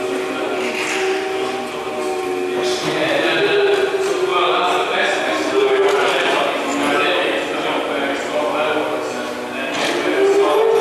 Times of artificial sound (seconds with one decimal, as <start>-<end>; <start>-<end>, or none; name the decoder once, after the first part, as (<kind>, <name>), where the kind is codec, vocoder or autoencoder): 4.3-6.3 (vocoder, BigVGAN v2)

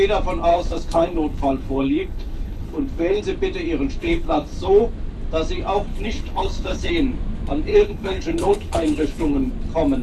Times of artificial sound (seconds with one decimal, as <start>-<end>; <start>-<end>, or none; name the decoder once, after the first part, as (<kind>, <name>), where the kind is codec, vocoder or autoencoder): 0.5-3.2 (codec, HILCodec); 4.0-4.8; 5.9-6.9; 7.7-9.5

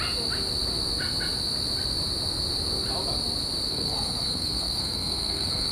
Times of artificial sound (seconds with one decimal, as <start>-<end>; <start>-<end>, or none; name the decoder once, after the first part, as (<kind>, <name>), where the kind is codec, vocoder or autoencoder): 3.7-5.7 (codec, SNAC)

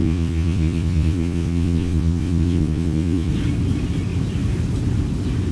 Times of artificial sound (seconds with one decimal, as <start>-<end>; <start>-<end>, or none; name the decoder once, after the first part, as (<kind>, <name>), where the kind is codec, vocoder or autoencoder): 0.0-3.3 (vocoder, Vocos)

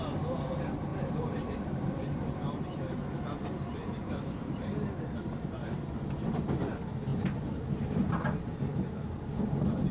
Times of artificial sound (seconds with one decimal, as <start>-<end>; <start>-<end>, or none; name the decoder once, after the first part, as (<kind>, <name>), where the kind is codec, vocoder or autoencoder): 0.9-1.4 (vocoder, BigVGAN v2); 3.7-4.7; 7.1-8.2

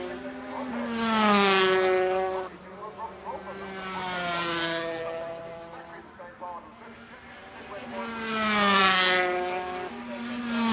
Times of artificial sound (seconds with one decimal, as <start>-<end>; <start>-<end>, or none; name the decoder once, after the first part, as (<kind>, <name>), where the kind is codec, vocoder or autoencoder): none

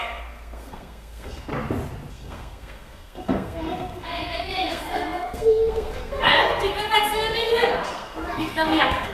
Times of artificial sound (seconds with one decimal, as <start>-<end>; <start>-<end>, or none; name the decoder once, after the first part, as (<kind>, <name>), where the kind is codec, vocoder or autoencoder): 0.0-1.5 (codec, SNAC); 2.1-9.1